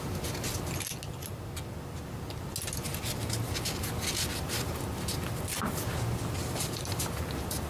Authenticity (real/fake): real